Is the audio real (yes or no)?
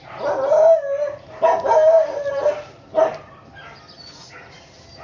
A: yes